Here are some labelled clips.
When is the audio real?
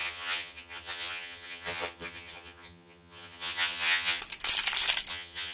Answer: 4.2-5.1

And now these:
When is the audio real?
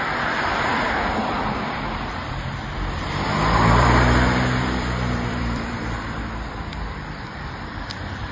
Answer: none